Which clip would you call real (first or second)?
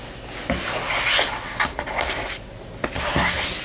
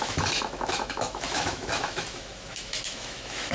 first